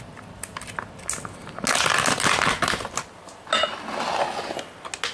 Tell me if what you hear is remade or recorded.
recorded